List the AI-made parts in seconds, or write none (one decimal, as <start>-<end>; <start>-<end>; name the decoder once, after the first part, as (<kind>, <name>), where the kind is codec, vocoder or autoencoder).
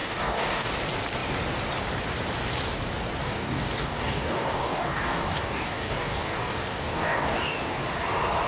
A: 0.0-0.7 (codec, DAC); 3.2-7.8